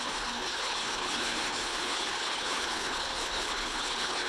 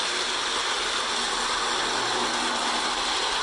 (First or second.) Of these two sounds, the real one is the second